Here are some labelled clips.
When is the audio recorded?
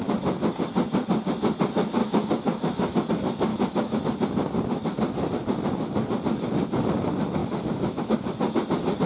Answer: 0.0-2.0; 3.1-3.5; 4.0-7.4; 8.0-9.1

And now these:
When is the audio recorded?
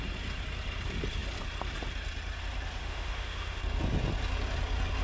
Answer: 0.0-2.8; 3.6-5.0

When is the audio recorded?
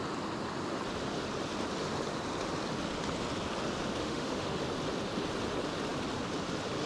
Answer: 0.0-4.0; 4.6-6.9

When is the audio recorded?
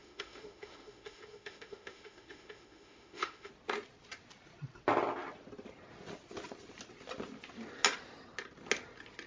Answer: 3.5-9.3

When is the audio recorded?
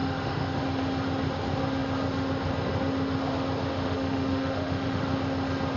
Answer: 0.6-3.7; 5.0-5.8